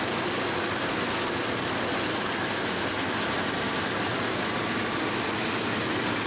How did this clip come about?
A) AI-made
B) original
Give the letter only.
B